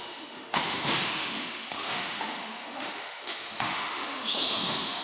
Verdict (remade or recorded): remade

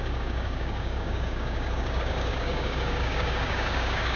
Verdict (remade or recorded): remade